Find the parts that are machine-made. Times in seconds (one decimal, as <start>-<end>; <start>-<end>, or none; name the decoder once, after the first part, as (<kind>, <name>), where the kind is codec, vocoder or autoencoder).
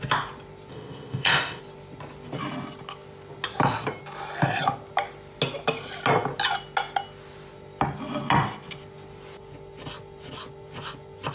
0.7-1.6 (codec, ZipCodec)